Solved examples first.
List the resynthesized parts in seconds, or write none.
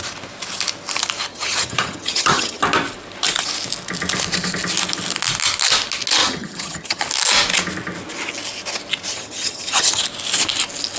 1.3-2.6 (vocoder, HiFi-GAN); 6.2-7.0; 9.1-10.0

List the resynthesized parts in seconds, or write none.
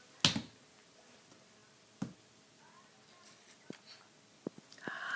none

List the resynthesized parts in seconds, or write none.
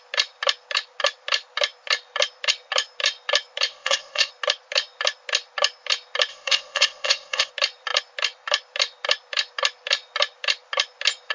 3.7-4.3 (codec, ZipCodec); 6.3-7.5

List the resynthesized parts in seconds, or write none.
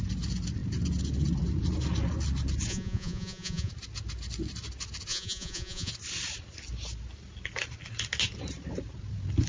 2.7-3.7 (vocoder, Vocos); 5.1-5.9